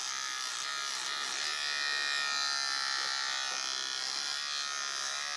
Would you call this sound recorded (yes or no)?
yes